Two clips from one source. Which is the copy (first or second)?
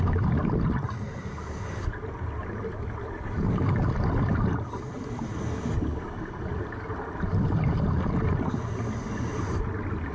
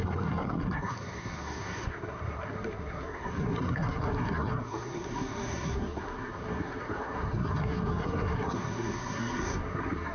second